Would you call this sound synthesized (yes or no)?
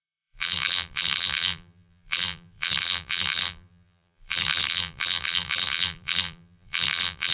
yes